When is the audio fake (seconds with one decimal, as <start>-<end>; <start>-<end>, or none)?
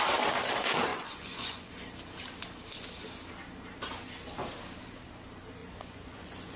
0.9-1.7; 5.6-6.6